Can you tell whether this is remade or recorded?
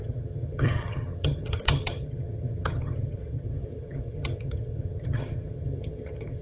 remade